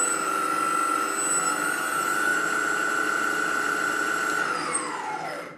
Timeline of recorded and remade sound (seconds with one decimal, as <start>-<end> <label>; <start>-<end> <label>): 0.0-2.3 recorded; 2.3-4.3 remade; 4.3-5.6 recorded